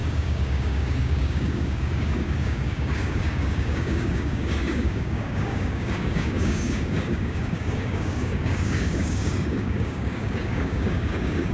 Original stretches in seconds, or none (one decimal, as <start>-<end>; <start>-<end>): none